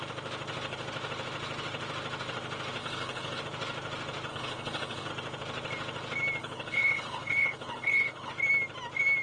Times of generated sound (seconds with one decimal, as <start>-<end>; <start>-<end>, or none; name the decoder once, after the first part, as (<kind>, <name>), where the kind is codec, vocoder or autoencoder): 2.8-3.4 (codec, HILCodec); 4.3-5.1; 6.4-8.3